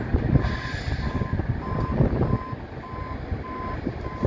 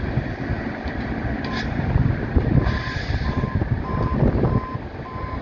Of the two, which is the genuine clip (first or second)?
first